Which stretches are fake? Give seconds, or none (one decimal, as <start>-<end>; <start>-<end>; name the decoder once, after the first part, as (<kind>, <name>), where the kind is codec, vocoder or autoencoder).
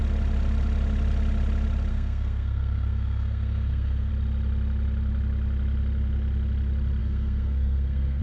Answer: 1.9-4.1 (codec, SNAC); 7.0-8.2